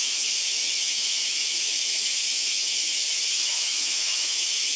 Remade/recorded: remade